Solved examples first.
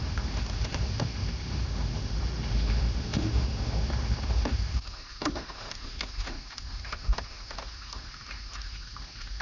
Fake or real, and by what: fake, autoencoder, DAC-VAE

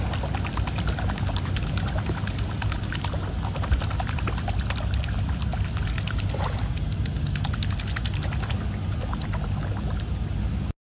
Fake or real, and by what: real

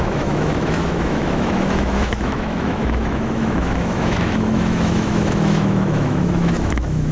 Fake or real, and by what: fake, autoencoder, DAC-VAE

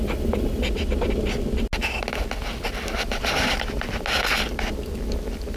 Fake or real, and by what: real